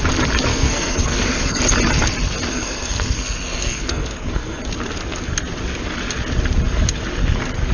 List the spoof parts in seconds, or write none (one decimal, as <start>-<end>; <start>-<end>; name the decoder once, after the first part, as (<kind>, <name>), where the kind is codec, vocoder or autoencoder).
0.5-1.6 (codec, SNAC); 2.5-4.6